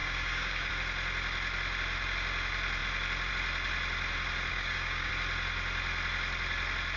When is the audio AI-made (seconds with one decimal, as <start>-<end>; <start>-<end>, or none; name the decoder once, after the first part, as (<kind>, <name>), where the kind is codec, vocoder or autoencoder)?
0.0-0.7 (codec, DAC); 4.5-5.1